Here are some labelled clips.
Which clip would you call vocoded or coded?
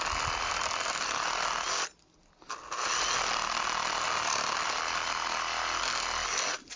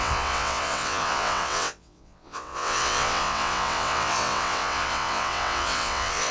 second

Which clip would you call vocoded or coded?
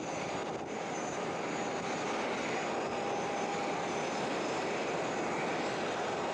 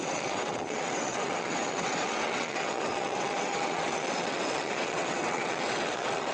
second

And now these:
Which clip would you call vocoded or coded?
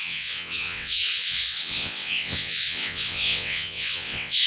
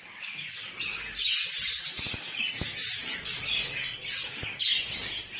first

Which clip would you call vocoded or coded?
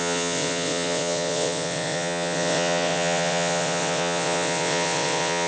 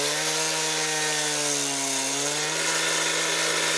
first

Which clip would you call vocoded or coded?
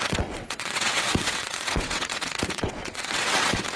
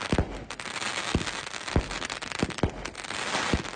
first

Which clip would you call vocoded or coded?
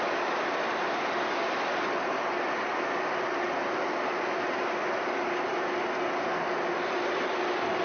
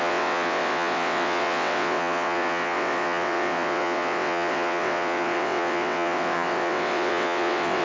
second